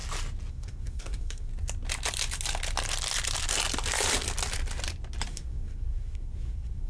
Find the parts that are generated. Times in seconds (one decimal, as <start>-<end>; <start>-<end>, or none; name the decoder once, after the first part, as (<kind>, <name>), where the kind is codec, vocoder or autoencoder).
0.5-1.5 (codec, SNAC); 5.3-6.9